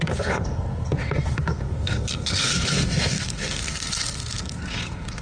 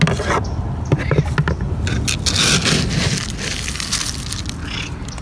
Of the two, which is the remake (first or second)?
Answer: first